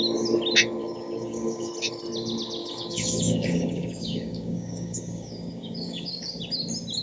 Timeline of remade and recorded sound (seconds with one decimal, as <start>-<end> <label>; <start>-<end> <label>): 0.0-0.8 recorded; 0.8-1.7 remade; 1.7-2.6 recorded; 2.6-6.2 remade; 6.2-7.0 recorded